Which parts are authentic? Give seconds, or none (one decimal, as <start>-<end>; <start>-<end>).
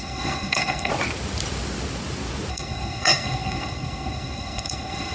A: 0.9-2.5